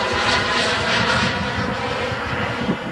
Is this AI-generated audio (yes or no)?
no